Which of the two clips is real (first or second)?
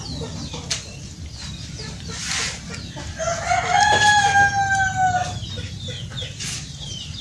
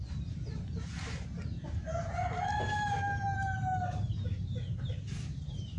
first